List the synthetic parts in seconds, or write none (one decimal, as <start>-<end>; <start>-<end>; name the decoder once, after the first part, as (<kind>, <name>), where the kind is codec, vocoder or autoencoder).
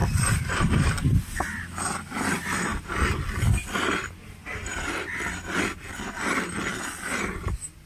none